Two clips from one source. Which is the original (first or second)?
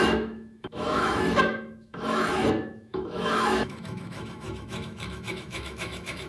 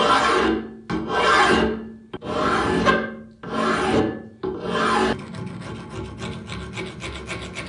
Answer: second